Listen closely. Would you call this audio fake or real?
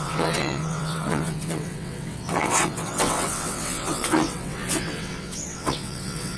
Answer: fake